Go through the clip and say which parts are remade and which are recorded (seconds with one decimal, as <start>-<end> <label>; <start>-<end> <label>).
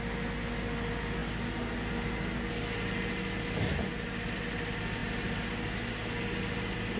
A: 0.0-7.0 recorded